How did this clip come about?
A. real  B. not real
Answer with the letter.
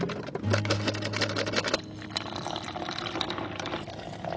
A